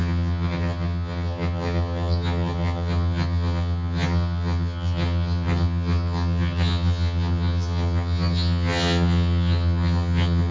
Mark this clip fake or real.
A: fake